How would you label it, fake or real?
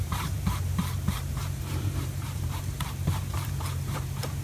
fake